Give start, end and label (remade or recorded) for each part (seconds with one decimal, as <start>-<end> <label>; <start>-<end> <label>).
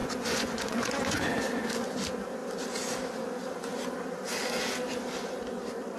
0.0-1.2 remade; 1.2-6.0 recorded